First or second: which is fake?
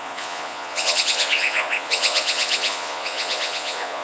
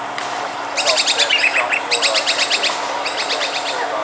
first